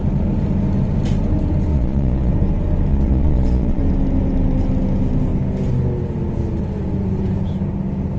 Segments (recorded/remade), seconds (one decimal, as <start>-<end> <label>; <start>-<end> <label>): 0.0-1.7 recorded; 1.7-2.3 remade; 2.3-2.9 recorded; 2.9-3.8 remade; 3.8-8.2 recorded